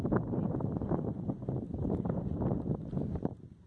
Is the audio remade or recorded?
remade